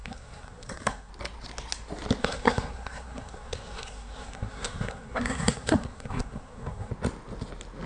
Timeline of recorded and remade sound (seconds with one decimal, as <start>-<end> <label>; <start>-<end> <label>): 0.0-1.1 remade; 1.1-2.2 recorded; 2.2-6.9 remade; 6.9-7.9 recorded